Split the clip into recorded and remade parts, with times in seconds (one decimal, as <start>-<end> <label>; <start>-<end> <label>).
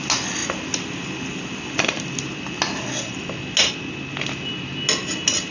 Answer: 0.0-5.5 recorded